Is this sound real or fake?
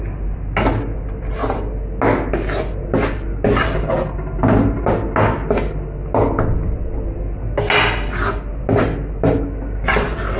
real